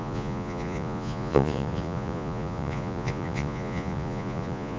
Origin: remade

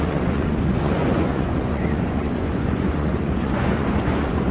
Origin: remade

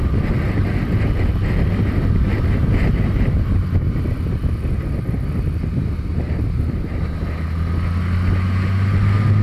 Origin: recorded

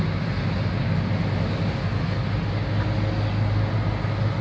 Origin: recorded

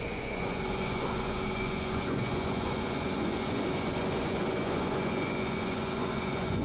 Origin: remade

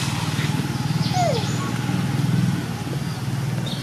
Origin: recorded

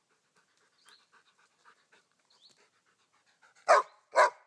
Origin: recorded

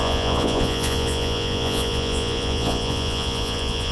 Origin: remade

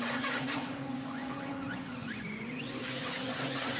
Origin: remade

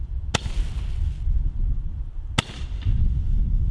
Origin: recorded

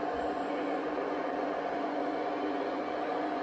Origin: remade